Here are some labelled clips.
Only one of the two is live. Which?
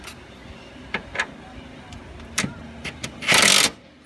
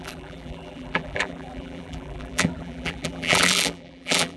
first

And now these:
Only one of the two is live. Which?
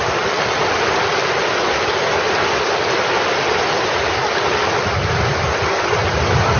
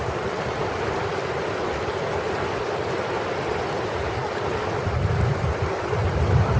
first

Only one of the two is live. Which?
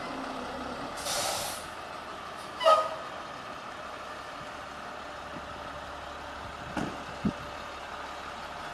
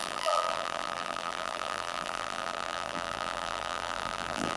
first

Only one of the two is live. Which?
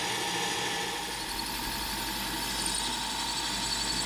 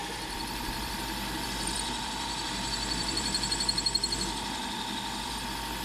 first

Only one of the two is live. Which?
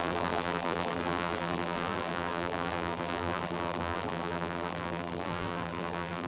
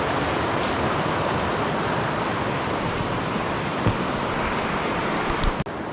second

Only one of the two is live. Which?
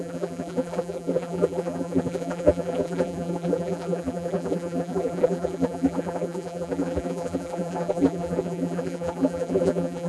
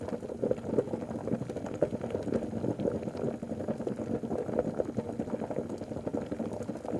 second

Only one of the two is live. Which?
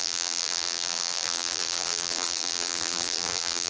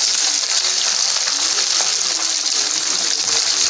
second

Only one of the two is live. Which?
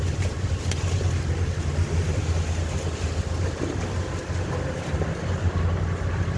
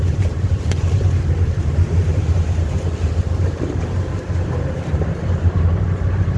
first